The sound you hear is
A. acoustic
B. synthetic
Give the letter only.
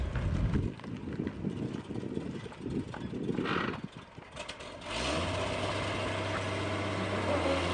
A